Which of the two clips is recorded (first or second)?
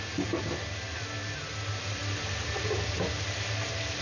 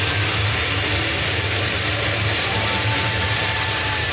first